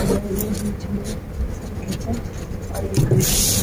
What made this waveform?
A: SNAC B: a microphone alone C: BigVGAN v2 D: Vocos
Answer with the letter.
B